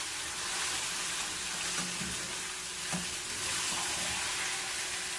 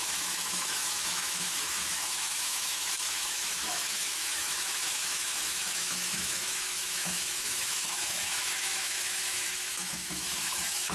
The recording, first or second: first